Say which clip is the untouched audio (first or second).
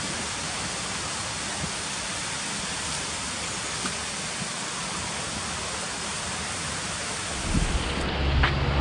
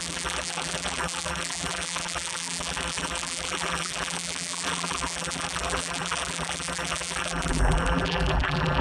first